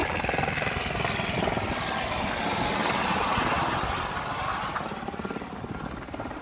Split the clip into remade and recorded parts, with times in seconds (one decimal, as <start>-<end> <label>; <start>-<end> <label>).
0.0-6.4 recorded